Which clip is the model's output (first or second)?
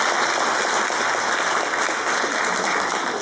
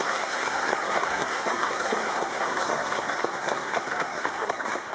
second